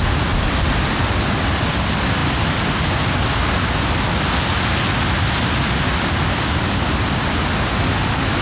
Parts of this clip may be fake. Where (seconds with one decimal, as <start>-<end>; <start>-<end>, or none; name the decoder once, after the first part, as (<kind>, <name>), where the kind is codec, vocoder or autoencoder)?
none